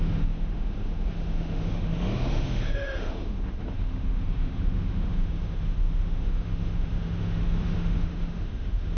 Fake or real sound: fake